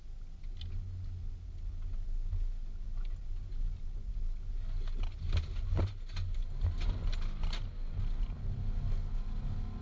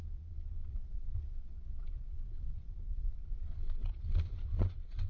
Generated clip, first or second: second